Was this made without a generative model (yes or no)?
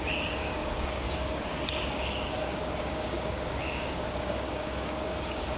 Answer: no